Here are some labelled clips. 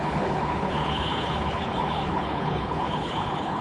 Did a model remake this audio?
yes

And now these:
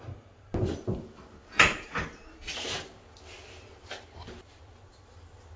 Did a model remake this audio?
no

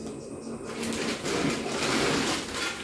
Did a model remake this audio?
no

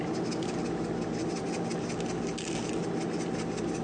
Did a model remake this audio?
no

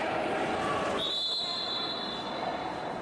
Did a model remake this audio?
no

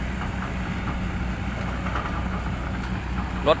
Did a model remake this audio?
no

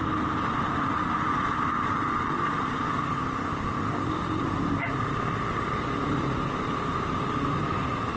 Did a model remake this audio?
no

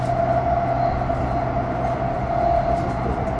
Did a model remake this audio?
no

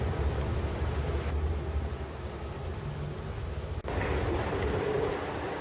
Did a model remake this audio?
no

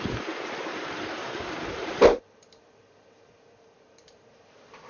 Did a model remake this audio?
yes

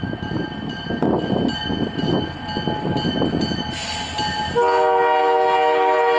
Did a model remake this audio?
no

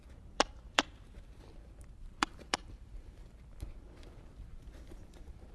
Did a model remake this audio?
yes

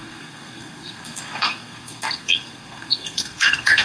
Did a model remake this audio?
yes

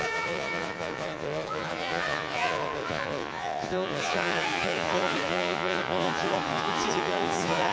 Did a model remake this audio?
yes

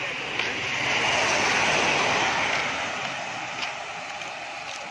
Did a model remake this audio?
no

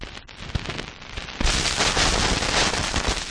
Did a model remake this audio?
no